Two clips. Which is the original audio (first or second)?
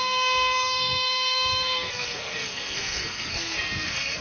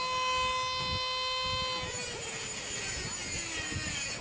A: second